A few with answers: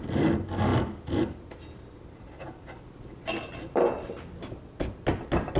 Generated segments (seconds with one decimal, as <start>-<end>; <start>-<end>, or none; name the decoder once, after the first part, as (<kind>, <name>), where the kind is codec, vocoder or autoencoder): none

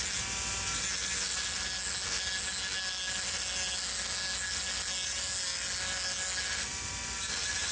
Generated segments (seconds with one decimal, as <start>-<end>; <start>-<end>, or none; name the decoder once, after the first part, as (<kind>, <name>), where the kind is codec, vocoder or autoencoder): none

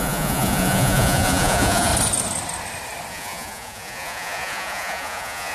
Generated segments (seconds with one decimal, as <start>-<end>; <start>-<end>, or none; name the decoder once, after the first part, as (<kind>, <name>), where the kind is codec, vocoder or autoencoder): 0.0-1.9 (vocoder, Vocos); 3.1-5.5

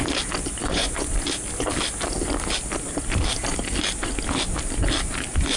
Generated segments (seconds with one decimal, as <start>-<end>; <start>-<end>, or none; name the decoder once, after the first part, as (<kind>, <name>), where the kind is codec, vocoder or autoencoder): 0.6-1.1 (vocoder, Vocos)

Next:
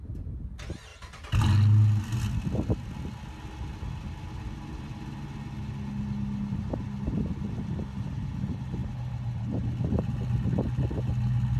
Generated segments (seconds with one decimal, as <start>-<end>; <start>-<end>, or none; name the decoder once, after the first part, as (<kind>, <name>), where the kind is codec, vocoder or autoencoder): none

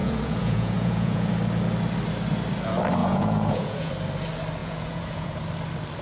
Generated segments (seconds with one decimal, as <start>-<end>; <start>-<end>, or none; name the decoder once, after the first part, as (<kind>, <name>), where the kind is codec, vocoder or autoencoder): 0.0-1.3 (vocoder, Vocos); 3.0-3.9; 4.6-5.4